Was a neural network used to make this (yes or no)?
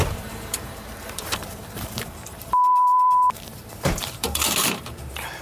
yes